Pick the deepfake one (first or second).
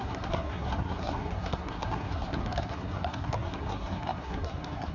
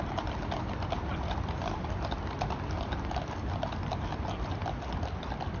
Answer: first